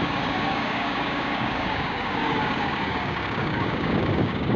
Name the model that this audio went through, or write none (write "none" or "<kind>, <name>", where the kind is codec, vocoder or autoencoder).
codec, DAC